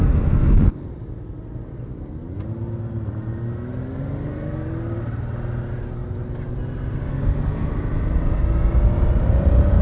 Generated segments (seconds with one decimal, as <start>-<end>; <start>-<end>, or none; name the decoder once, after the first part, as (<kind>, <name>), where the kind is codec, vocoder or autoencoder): 0.0-0.9 (codec, SNAC); 7.1-7.7